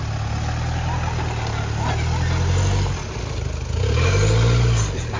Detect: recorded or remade recorded